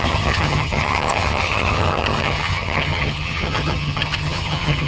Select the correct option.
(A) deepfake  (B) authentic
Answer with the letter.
A